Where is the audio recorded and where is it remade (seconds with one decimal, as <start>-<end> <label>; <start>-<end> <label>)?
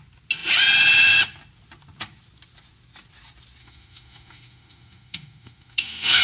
0.0-3.6 recorded; 3.6-6.2 remade